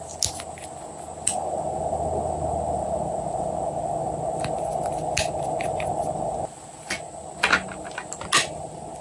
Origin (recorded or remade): recorded